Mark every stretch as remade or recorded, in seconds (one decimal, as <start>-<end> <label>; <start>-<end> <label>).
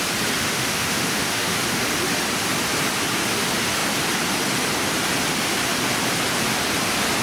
0.0-0.4 recorded; 0.4-1.8 remade; 1.8-7.2 recorded